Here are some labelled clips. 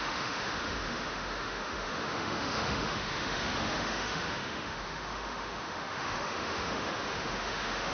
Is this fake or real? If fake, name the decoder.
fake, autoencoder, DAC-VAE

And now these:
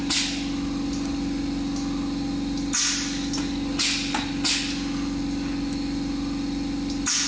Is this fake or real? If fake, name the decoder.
real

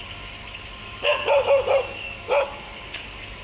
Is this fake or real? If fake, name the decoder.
real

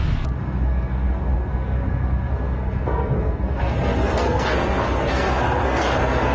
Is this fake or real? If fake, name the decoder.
fake, codec, SNAC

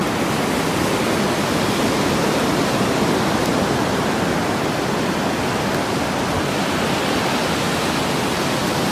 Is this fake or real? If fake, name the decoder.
real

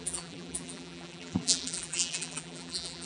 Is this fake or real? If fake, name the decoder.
fake, vocoder, BigVGAN v2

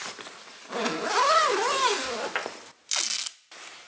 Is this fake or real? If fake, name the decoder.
real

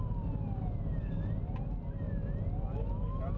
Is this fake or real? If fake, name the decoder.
real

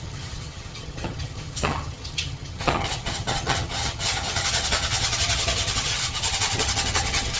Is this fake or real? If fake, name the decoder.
fake, vocoder, HiFi-GAN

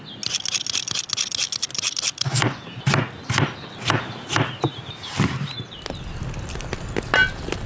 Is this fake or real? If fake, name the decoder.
real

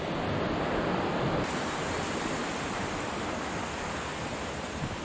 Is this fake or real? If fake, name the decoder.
real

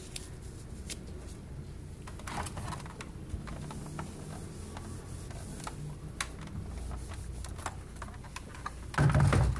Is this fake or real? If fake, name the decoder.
real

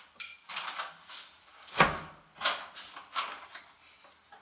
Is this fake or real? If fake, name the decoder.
real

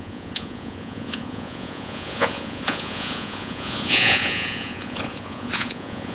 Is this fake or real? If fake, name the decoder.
fake, vocoder, Vocos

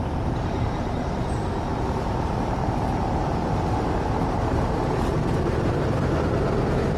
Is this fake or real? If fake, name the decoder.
fake, vocoder, BigVGAN v2